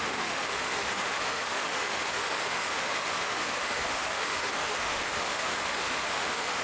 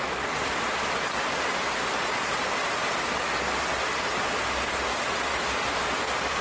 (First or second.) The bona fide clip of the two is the second